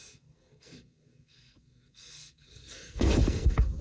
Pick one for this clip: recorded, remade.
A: remade